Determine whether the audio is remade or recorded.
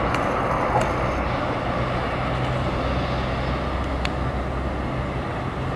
recorded